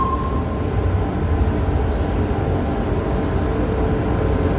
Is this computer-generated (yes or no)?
no